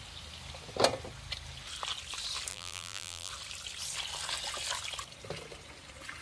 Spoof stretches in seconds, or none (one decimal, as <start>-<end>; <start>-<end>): 2.5-3.3